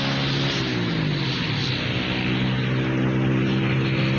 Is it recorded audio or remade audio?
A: recorded